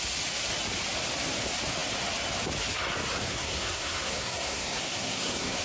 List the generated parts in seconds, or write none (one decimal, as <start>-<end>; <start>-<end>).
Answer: 3.3-5.6